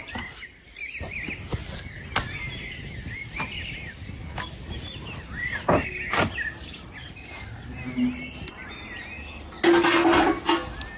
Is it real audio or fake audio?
real